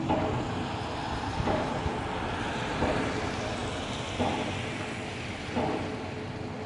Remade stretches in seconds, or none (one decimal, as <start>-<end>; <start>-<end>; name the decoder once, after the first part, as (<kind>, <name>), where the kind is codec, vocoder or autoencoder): none